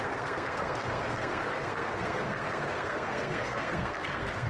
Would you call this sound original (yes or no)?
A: no